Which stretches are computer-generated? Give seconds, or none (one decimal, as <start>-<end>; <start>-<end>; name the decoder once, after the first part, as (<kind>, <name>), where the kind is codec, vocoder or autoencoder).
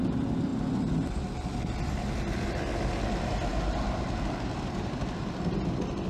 none